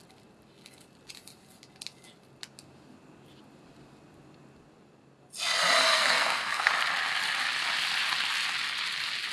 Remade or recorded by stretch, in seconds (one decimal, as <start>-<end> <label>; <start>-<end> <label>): 0.0-5.9 recorded; 5.9-6.7 remade; 6.7-9.3 recorded